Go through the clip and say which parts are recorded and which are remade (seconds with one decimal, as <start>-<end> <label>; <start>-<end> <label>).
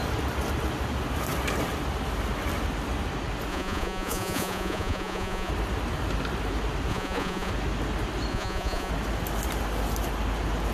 0.0-3.5 recorded; 3.5-5.5 remade; 5.5-6.9 recorded; 6.9-7.5 remade; 7.5-8.3 recorded; 8.3-8.9 remade; 8.9-10.7 recorded